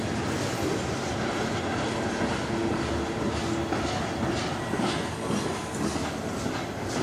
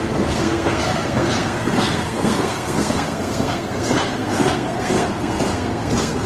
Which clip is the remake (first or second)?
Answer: second